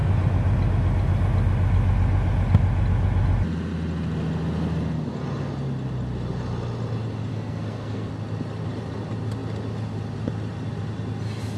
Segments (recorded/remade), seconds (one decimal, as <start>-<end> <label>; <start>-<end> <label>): 0.0-7.3 recorded; 7.3-8.1 remade; 8.1-11.6 recorded